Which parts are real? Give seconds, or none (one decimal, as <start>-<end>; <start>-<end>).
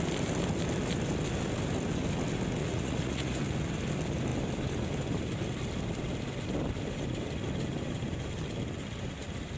0.0-2.6; 3.4-9.6